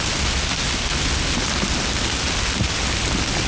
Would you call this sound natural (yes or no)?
yes